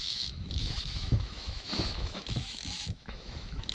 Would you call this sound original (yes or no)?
no